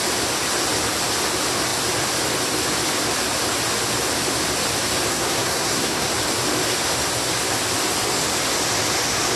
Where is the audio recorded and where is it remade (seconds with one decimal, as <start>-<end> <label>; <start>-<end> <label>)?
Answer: 0.0-5.1 recorded; 5.1-6.1 remade; 6.1-9.4 recorded